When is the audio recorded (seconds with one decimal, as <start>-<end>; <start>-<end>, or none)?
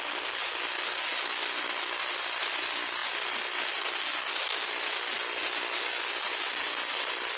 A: 0.0-7.4